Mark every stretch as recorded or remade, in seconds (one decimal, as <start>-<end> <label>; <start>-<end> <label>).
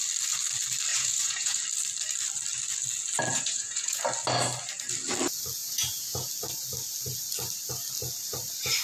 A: 0.0-0.9 recorded; 0.9-1.6 remade; 1.6-3.3 recorded; 3.3-4.0 remade; 4.0-5.6 recorded; 5.6-6.3 remade; 6.3-8.8 recorded